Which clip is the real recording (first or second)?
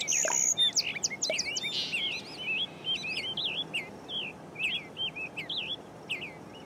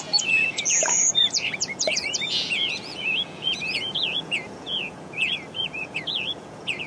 first